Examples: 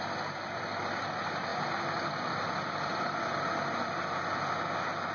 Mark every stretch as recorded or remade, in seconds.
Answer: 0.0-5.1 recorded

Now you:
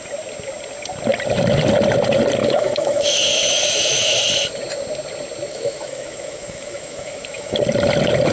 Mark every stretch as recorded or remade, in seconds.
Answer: 0.0-2.4 recorded; 2.4-4.2 remade; 4.2-5.5 recorded; 5.5-7.6 remade; 7.6-8.3 recorded

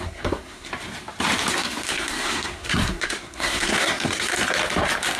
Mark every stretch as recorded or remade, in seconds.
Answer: 0.0-0.7 remade; 0.7-1.5 recorded; 1.5-4.3 remade; 4.3-5.2 recorded